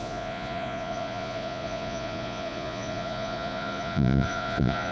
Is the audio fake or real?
fake